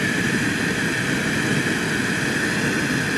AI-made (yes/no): no